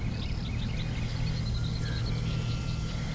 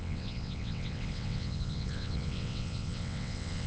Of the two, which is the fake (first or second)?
second